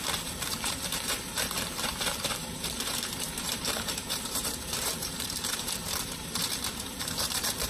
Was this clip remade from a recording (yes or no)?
yes